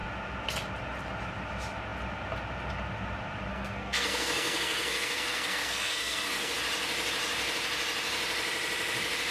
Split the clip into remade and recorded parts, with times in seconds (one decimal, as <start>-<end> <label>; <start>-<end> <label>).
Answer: 0.0-3.5 recorded; 3.5-6.5 remade; 6.5-9.3 recorded